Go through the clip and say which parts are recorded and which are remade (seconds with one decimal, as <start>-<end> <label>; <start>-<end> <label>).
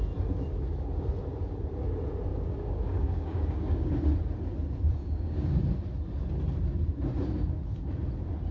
0.0-2.3 recorded; 2.3-3.9 remade; 3.9-5.0 recorded; 5.0-5.6 remade; 5.6-8.5 recorded